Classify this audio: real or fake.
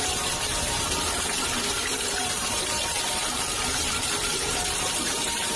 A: fake